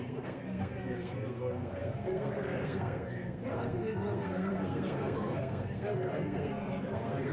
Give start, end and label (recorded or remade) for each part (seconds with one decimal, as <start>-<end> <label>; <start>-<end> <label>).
0.0-7.3 remade